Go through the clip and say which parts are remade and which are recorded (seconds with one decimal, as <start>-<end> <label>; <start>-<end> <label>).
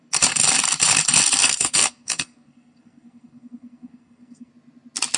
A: 0.0-1.4 recorded; 1.4-4.5 remade; 4.5-5.2 recorded